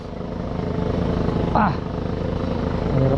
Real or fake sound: real